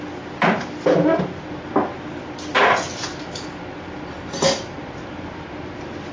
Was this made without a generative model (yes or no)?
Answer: yes